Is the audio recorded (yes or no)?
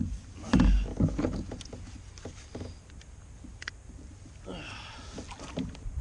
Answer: yes